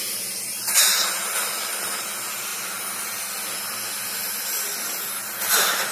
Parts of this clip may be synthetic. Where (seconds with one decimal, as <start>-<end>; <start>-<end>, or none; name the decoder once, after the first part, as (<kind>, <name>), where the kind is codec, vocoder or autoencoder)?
none